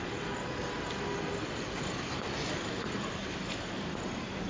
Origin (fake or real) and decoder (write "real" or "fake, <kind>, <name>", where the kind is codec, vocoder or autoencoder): real